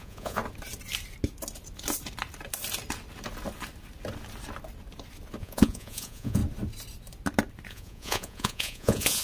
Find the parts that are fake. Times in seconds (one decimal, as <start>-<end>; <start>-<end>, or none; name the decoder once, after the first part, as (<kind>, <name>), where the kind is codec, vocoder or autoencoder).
0.0-0.4 (vocoder, Vocos); 5.4-6.4; 7.7-9.2